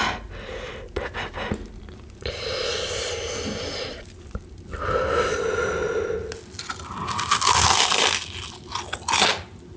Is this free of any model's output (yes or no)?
yes